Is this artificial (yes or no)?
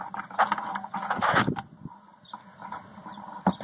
no